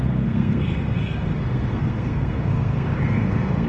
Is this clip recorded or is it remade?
remade